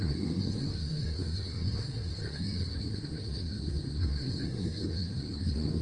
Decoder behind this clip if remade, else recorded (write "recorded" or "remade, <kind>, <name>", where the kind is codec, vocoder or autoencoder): remade, codec, SNAC